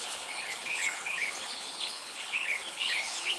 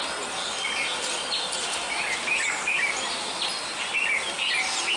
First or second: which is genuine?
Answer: second